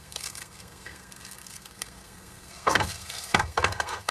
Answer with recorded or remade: remade